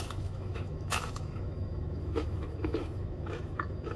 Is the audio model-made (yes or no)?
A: yes